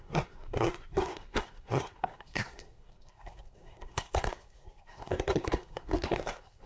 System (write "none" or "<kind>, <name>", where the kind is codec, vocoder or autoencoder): codec, SNAC